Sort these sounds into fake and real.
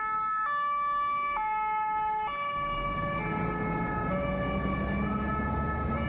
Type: real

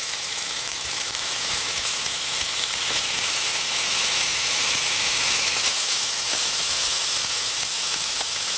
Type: fake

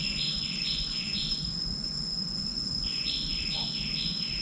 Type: fake